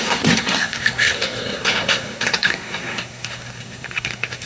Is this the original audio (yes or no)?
no